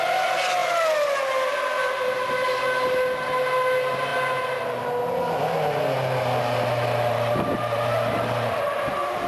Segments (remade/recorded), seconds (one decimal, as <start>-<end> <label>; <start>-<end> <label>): 0.0-9.3 recorded